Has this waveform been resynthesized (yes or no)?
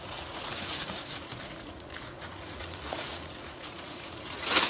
yes